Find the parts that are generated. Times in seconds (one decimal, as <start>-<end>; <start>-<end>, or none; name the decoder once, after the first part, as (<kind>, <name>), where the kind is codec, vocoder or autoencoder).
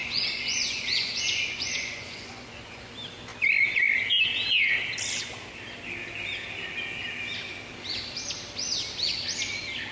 0.0-2.9 (vocoder, Vocos)